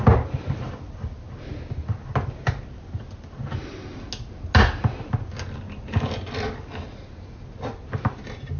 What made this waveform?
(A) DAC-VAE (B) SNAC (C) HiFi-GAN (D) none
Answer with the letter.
D